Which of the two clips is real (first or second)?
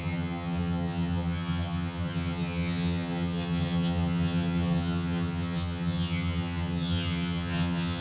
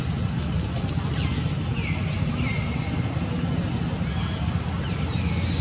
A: second